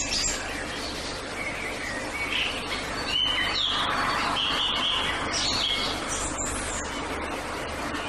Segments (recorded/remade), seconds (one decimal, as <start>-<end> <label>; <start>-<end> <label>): 0.0-8.1 recorded